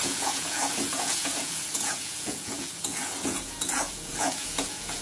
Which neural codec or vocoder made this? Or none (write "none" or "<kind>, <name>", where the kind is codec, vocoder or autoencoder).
vocoder, Vocos